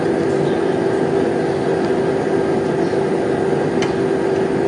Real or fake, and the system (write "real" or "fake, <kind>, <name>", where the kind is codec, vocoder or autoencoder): real